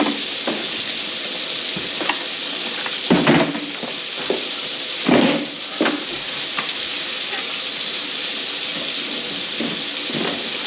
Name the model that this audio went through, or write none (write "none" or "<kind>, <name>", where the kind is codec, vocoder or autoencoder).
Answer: none